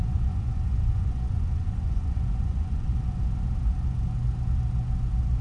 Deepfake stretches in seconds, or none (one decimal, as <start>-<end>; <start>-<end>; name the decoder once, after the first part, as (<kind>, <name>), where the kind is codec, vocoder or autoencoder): 0.0-3.2 (vocoder, Vocos)